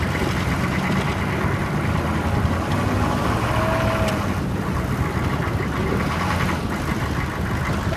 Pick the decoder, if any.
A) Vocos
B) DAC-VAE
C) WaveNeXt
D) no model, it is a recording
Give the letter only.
D